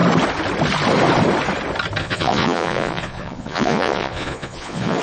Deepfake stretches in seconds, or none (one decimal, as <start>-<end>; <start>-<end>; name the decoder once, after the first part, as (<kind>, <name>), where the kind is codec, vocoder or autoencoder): 2.0-5.0 (vocoder, Vocos)